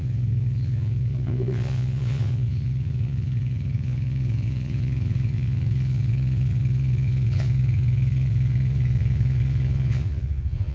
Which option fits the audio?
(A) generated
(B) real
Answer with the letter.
A